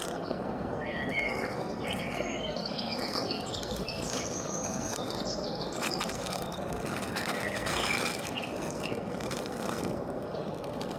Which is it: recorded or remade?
remade